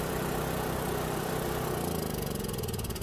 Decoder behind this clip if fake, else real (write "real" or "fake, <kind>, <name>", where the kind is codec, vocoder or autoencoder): fake, vocoder, BigVGAN v2